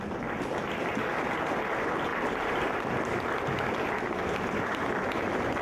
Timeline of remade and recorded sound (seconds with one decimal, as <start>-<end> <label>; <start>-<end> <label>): 0.0-5.6 recorded